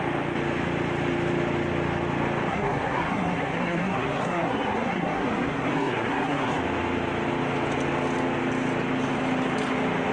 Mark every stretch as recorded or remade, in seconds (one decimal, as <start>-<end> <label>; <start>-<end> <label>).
0.0-2.5 recorded; 2.5-6.6 remade; 6.6-10.1 recorded